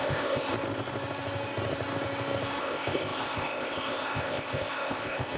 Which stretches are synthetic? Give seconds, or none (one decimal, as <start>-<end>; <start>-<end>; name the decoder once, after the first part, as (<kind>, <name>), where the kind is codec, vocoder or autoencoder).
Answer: 0.0-0.5 (codec, ZipCodec); 2.6-5.4

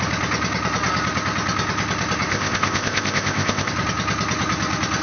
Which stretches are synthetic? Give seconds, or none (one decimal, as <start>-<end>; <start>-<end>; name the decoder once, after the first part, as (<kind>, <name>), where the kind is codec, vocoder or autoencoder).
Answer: 2.3-3.7 (codec, ZipCodec)

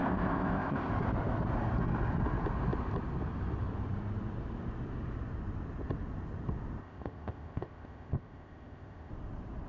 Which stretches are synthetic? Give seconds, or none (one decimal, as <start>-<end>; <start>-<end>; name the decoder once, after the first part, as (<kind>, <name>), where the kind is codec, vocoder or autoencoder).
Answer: 0.0-0.9 (codec, ZipCodec); 6.8-9.1

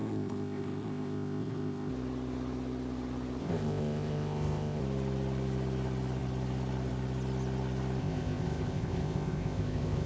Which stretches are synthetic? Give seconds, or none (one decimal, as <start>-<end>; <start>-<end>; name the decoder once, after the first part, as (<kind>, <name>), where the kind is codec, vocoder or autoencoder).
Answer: 0.0-1.9 (codec, ZipCodec); 3.4-4.8; 8.0-10.1

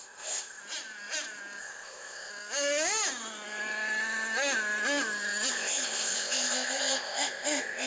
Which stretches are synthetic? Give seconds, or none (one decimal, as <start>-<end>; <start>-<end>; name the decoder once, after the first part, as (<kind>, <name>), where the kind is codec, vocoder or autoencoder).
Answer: 0.0-0.6 (codec, ZipCodec); 1.6-2.3; 5.5-7.9

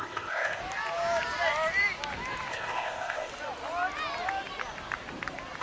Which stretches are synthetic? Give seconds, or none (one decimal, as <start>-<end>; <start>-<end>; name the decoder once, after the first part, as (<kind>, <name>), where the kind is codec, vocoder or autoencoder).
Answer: 0.0-0.6 (codec, ZipCodec); 2.5-3.3

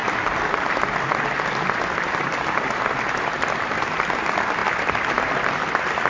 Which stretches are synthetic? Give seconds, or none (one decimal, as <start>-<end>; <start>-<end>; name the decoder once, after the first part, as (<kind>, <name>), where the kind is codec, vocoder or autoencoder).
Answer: none